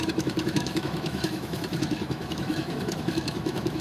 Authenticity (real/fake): fake